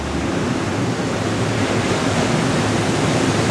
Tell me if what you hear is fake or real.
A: real